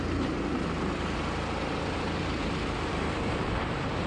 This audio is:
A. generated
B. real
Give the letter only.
A